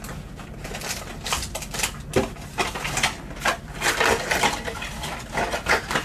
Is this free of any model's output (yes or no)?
yes